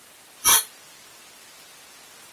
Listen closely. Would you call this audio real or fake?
real